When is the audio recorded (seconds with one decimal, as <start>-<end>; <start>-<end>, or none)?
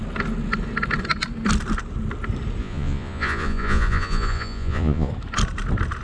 0.0-2.6; 5.1-6.0